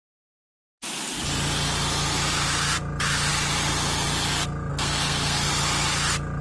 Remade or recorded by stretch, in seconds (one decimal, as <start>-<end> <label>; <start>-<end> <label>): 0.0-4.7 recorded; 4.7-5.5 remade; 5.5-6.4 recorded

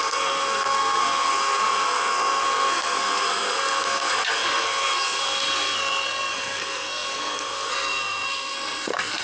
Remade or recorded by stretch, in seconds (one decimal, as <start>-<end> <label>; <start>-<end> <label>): 0.0-9.2 remade

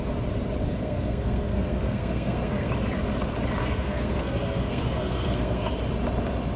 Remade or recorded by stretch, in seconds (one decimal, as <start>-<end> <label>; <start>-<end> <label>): 0.0-0.7 recorded; 0.7-2.7 remade; 2.7-3.6 recorded; 3.6-5.7 remade; 5.7-6.6 recorded